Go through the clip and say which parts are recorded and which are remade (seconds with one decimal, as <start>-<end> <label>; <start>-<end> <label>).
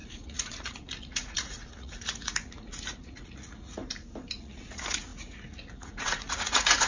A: 0.0-3.8 remade; 3.8-4.4 recorded; 4.4-6.9 remade